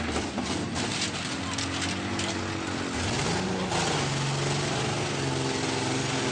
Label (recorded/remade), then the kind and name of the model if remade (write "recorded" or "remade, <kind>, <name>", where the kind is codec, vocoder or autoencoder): recorded